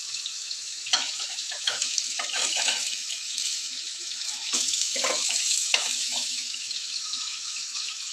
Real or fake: fake